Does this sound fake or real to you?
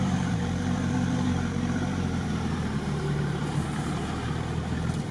fake